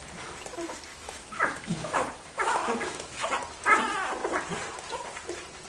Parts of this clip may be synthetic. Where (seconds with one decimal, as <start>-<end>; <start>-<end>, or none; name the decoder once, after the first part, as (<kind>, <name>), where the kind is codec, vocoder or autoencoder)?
0.9-3.3 (autoencoder, DAC-VAE)